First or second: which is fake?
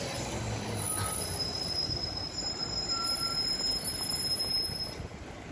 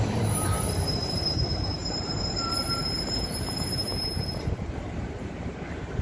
second